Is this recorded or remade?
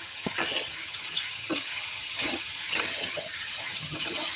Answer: remade